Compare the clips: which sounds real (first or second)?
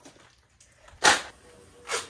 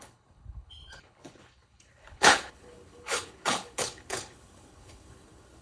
first